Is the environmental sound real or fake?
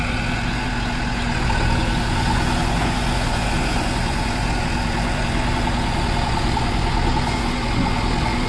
fake